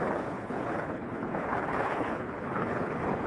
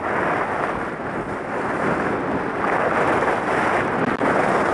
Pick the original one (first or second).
second